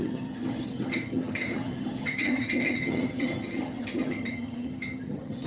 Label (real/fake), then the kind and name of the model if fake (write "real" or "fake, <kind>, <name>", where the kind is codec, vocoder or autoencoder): fake, vocoder, HiFi-GAN